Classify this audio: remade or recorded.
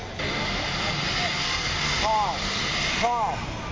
recorded